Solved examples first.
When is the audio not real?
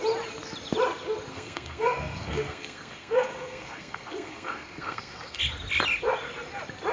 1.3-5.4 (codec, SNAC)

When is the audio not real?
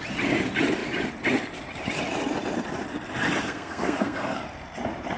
3.4-4.4 (codec, SNAC)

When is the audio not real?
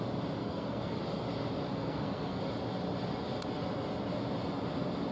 0.4-1.0 (codec, SNAC); 1.7-2.4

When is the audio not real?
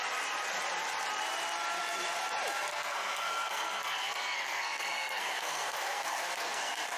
2.7-7.0 (codec, SNAC)